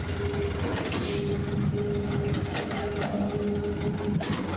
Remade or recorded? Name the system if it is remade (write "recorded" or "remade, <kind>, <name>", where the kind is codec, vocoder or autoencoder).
recorded